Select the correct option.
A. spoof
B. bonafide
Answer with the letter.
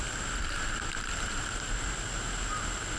B